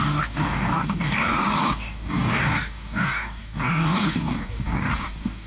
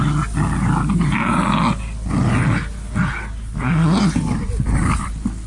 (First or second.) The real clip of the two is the second